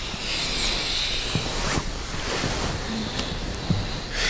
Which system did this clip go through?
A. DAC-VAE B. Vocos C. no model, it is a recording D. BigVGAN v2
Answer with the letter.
C